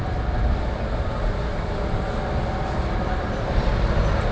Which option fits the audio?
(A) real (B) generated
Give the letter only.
A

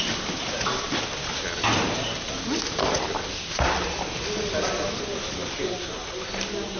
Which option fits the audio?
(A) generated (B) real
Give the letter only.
B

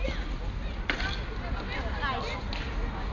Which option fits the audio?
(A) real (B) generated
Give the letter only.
A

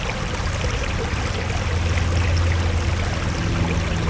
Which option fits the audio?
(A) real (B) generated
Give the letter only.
A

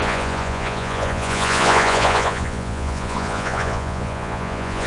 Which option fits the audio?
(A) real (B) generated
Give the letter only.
B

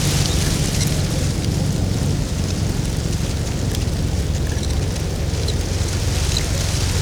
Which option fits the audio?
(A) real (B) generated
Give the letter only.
A